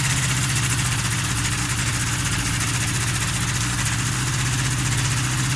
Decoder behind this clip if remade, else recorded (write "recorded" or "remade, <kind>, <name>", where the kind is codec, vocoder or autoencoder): recorded